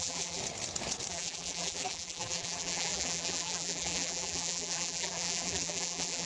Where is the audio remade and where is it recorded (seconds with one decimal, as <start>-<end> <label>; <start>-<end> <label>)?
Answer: 0.0-0.4 remade; 0.4-1.1 recorded; 1.1-6.3 remade